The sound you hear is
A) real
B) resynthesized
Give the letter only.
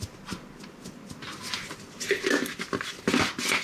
A